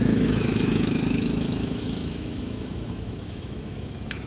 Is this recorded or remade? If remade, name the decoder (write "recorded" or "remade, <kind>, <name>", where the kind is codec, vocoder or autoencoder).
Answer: remade, autoencoder, DAC-VAE